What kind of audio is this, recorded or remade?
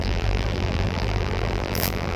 remade